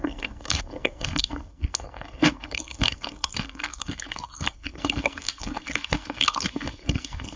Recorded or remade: remade